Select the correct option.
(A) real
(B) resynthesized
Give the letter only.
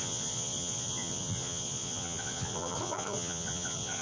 B